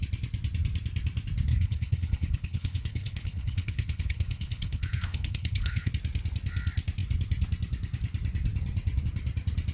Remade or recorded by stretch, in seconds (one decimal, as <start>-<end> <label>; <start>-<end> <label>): 0.0-1.5 recorded; 1.5-5.9 remade; 5.9-9.7 recorded